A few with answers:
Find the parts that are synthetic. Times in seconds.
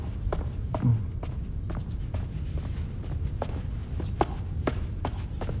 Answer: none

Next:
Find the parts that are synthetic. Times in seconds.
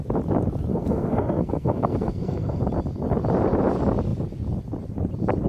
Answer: 0.7-2.6 (codec, SNAC)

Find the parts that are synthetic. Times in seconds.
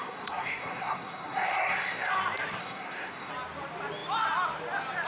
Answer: 0.0-2.1 (codec, SNAC); 2.6-3.3